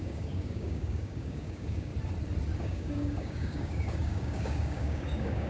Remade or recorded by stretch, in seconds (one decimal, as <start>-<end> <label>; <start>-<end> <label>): 0.0-1.9 remade; 1.9-2.6 recorded; 2.6-5.5 remade

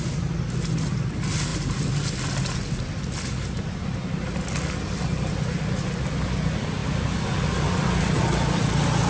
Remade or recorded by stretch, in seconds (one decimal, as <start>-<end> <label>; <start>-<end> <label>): 0.0-9.1 recorded